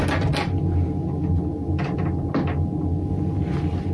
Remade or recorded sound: recorded